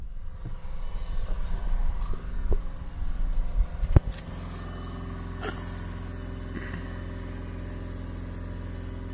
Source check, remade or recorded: recorded